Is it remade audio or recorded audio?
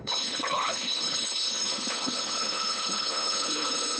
remade